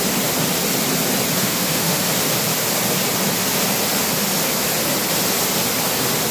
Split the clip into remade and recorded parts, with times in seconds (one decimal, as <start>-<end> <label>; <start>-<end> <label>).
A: 0.0-1.4 recorded; 1.4-2.0 remade; 2.0-6.3 recorded